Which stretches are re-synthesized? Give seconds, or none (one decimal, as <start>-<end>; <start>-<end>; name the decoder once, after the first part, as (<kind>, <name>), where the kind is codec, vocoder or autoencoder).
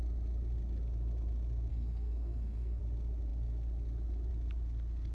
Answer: 1.7-2.8 (codec, SNAC)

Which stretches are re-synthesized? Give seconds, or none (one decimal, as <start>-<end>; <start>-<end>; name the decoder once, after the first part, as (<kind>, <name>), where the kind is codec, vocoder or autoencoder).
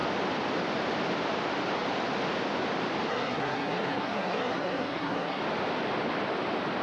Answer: 3.1-5.4 (codec, SNAC)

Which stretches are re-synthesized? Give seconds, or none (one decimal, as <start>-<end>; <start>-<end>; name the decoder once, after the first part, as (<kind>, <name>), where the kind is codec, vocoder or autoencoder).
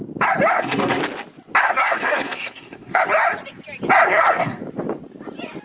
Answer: 0.5-1.0 (codec, SNAC); 1.6-3.0; 4.1-4.6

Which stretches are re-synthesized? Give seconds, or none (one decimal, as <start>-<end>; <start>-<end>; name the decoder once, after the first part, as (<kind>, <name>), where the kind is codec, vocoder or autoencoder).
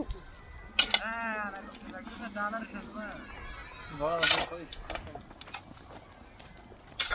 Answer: none